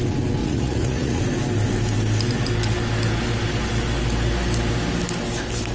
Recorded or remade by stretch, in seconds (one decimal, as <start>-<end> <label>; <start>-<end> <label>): 0.0-0.4 recorded; 0.4-1.2 remade; 1.2-5.7 recorded